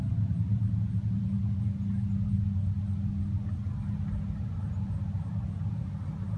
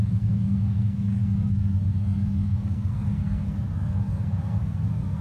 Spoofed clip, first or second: second